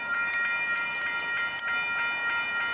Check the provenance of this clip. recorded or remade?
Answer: recorded